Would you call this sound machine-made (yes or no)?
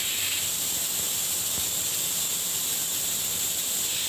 no